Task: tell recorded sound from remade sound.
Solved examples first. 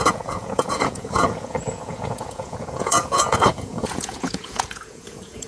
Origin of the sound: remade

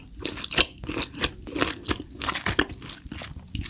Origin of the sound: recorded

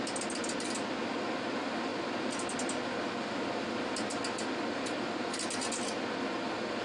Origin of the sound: recorded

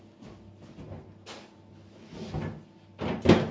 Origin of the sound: recorded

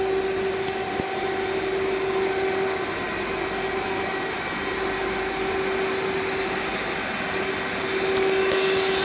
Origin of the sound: recorded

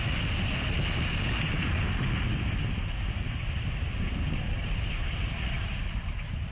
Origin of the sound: recorded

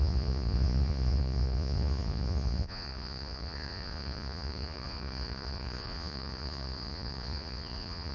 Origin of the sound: remade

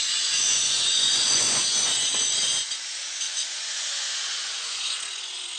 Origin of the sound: remade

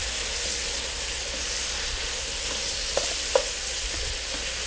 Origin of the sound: recorded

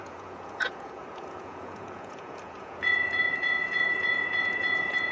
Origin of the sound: remade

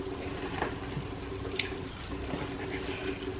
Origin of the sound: recorded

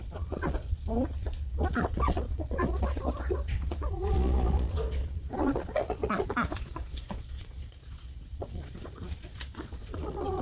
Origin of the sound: remade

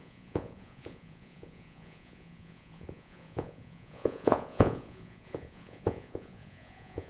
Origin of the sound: remade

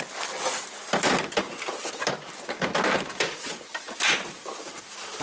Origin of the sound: recorded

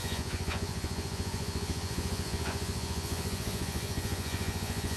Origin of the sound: remade